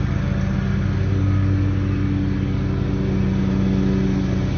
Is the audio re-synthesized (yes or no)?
no